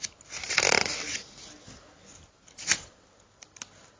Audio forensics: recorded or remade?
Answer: recorded